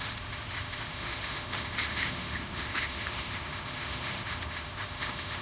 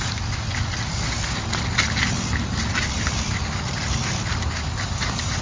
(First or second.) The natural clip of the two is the second